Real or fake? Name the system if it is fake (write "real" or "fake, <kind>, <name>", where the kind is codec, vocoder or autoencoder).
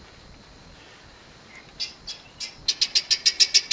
real